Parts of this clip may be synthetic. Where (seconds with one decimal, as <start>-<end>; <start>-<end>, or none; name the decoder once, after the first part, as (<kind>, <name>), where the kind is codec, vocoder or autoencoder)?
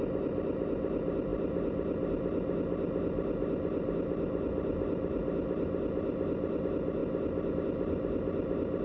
none